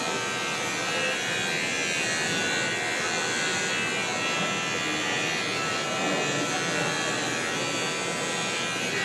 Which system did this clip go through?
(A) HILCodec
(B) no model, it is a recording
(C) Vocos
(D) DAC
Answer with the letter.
B